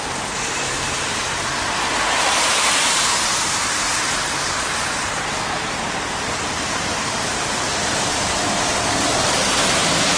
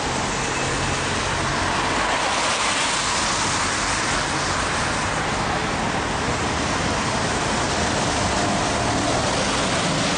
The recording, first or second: second